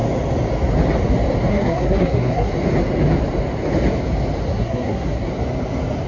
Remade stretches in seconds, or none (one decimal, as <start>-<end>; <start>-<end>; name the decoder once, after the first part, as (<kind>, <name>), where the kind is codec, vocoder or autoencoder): 1.5-2.5 (codec, SNAC); 4.5-5.3